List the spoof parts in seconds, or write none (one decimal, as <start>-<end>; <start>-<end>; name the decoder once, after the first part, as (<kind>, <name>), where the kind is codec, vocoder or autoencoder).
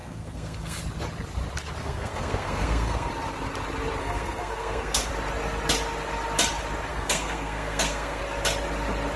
0.0-0.8 (codec, SNAC); 1.8-3.1; 4.0-5.1; 6.9-8.2